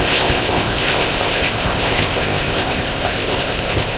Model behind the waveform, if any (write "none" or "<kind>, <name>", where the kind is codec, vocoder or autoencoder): codec, ZipCodec